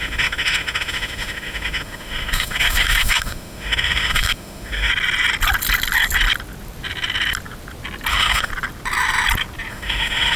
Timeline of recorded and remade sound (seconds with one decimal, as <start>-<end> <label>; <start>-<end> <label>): 0.0-4.9 remade; 4.9-8.1 recorded; 8.1-8.5 remade; 8.5-9.7 recorded; 9.7-10.4 remade